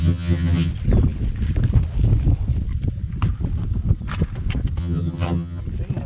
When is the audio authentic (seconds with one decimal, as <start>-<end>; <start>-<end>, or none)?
0.7-4.8; 5.6-6.1